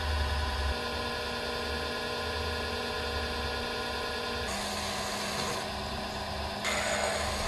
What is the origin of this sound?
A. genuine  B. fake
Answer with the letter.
A